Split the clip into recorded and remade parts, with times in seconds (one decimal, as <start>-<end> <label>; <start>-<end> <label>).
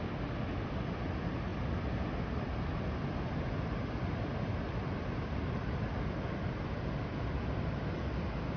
0.0-8.6 recorded